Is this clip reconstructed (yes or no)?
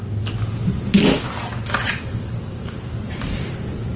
no